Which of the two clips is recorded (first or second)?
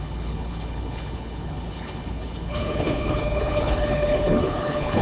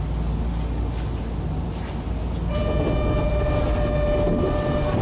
second